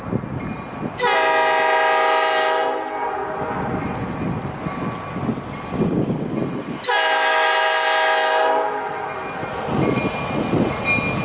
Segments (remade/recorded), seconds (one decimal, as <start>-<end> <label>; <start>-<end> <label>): 0.0-11.2 recorded

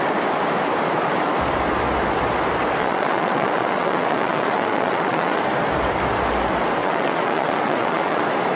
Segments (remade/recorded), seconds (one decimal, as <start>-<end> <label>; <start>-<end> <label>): 0.0-2.8 recorded; 2.8-5.4 remade; 5.4-6.8 recorded; 6.8-8.2 remade; 8.2-8.6 recorded

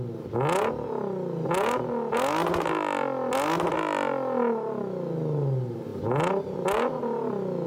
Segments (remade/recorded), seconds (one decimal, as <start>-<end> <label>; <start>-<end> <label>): 0.0-7.7 recorded

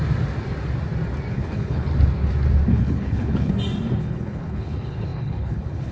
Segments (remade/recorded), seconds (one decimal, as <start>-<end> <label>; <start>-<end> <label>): 0.0-1.3 recorded; 1.3-1.9 remade; 1.9-2.7 recorded; 2.7-3.5 remade; 3.5-4.0 recorded; 4.0-5.9 remade